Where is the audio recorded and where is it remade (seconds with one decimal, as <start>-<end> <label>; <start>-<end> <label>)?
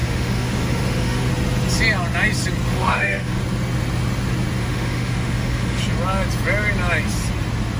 0.0-1.3 remade; 1.3-2.7 recorded; 2.7-3.4 remade; 3.4-4.6 recorded; 4.6-5.8 remade; 5.8-7.8 recorded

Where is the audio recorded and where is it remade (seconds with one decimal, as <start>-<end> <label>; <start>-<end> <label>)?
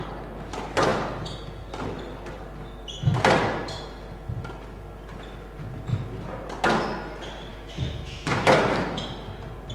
0.0-7.5 recorded; 7.5-8.5 remade; 8.5-9.7 recorded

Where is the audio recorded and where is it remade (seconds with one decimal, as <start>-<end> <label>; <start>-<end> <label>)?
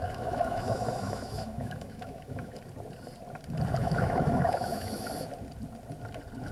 0.0-2.6 remade; 2.6-3.8 recorded; 3.8-5.1 remade; 5.1-6.5 recorded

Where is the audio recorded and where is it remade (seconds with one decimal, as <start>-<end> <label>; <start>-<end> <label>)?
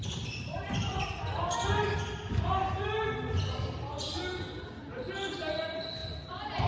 0.0-6.7 recorded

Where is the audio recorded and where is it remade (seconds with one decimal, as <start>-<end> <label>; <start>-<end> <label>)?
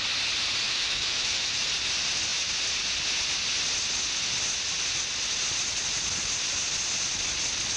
0.0-0.6 recorded; 0.6-1.7 remade; 1.7-7.8 recorded